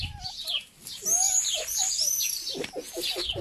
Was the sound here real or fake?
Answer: real